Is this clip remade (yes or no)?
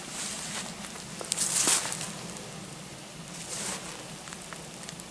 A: no